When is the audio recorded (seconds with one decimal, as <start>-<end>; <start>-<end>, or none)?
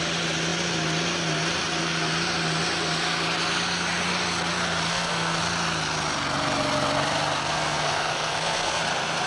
0.0-4.9; 5.4-7.4; 8.8-9.3